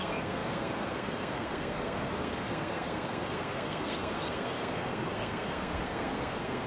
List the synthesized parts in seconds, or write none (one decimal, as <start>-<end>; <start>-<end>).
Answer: 0.0-6.7